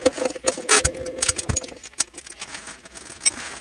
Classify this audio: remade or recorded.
recorded